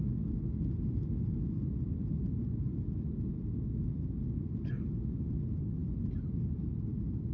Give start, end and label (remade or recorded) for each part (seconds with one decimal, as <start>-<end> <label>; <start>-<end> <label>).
0.0-7.3 recorded